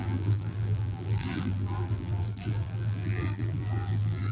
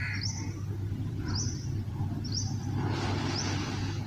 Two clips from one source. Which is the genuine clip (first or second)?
second